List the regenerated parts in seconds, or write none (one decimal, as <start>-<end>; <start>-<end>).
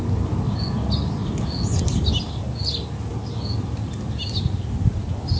none